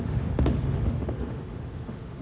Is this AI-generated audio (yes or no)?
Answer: yes